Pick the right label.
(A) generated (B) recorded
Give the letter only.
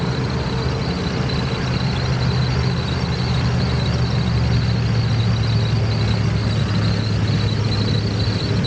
B